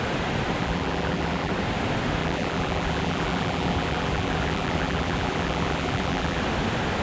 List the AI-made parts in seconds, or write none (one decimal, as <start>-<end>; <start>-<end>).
0.6-1.5; 2.2-6.4